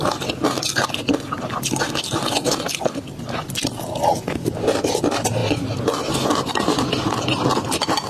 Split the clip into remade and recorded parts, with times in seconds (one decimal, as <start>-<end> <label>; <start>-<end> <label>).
0.0-8.1 recorded